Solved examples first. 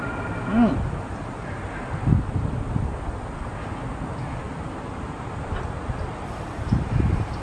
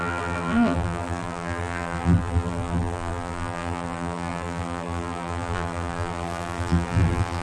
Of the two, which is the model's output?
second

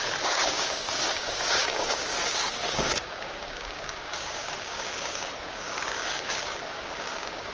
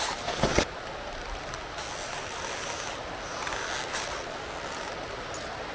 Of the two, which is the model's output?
first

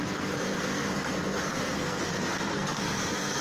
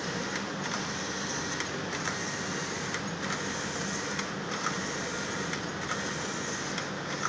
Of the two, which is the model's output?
first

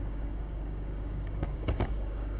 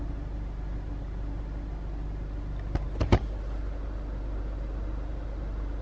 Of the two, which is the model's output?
first